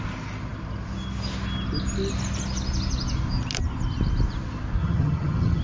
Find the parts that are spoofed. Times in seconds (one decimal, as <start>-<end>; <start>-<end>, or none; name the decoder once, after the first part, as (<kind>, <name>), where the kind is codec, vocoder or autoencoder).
4.8-5.6 (vocoder, HiFi-GAN)